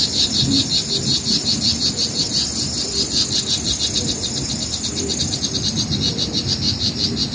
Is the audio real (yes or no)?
yes